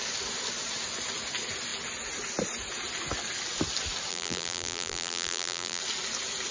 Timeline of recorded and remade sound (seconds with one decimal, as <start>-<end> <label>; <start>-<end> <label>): 0.0-4.1 recorded; 4.1-5.8 remade; 5.8-6.5 recorded